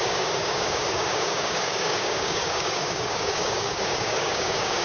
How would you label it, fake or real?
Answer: fake